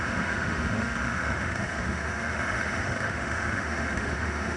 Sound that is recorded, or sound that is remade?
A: remade